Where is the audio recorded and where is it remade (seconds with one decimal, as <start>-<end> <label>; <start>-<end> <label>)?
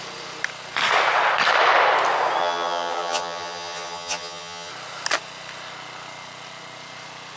0.0-2.4 recorded; 2.4-4.7 remade; 4.7-7.4 recorded